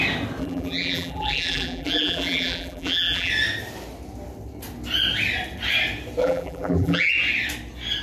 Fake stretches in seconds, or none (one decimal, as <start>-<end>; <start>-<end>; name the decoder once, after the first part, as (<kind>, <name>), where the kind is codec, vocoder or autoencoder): 0.4-3.3 (vocoder, BigVGAN v2); 6.2-7.1